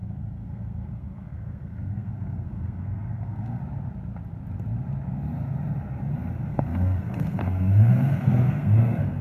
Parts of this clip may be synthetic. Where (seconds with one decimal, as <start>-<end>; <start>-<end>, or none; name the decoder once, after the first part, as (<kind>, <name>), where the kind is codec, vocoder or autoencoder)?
0.0-3.6 (codec, SNAC); 6.5-9.2